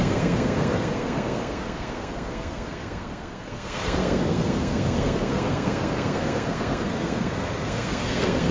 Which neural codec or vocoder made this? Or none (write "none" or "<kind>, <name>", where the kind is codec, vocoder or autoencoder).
codec, SNAC